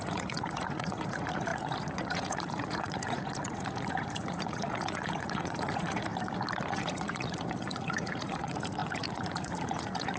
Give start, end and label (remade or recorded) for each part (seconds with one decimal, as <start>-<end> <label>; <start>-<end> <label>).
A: 0.0-6.1 remade; 6.1-6.7 recorded; 6.7-10.2 remade